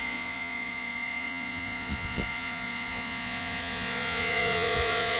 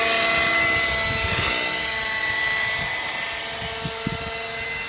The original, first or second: second